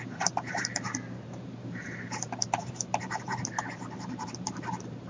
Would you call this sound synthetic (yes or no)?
yes